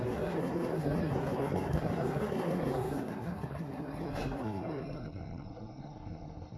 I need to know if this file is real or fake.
fake